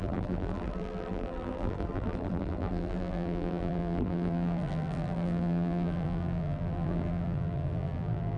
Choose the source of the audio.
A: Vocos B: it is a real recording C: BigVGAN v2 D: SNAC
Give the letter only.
C